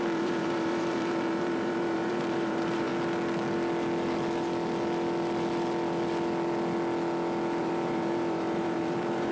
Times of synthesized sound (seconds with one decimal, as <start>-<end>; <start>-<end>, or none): 0.0-2.9; 7.6-9.3